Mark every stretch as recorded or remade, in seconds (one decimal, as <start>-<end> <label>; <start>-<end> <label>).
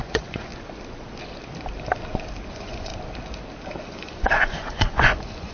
0.0-0.5 remade; 0.5-2.5 recorded; 2.5-2.9 remade; 2.9-3.8 recorded; 3.8-5.5 remade